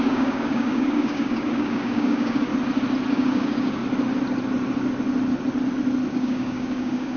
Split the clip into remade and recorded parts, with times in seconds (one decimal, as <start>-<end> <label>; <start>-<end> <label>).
0.0-2.5 remade; 2.5-3.1 recorded; 3.1-3.8 remade; 3.8-6.1 recorded; 6.1-7.2 remade